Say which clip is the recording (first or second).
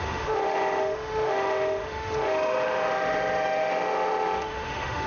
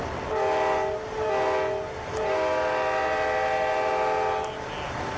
second